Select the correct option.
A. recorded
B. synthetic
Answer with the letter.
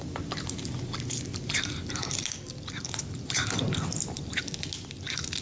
A